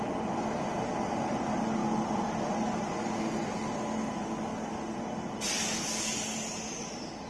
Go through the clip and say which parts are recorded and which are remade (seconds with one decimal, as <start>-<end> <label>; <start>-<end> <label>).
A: 0.0-7.3 recorded